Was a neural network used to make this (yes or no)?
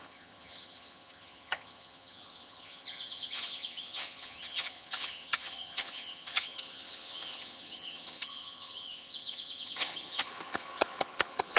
yes